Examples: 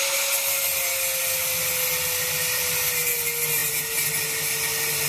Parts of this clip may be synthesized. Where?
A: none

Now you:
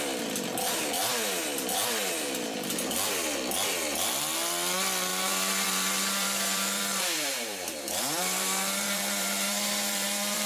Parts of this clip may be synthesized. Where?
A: 5.1-10.5 (vocoder, BigVGAN v2)

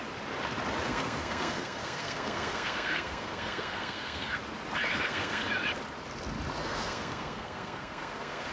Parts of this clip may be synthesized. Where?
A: 0.9-4.4 (codec, SNAC); 4.9-5.4; 6.6-8.5